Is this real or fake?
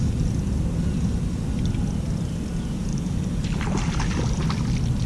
real